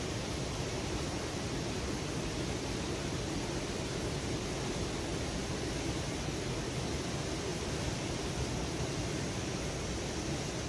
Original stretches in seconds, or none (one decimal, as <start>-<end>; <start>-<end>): 0.0-7.5; 8.3-10.7